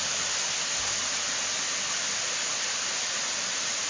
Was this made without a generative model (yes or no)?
yes